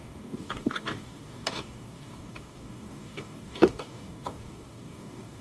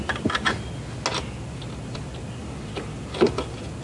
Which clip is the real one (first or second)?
second